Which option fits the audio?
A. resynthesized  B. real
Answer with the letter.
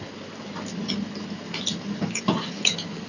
B